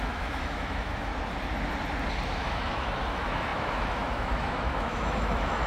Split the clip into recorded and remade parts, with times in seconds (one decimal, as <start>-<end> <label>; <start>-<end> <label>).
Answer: 0.0-1.1 remade; 1.1-2.3 recorded; 2.3-5.7 remade